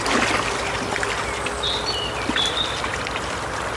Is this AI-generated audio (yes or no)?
no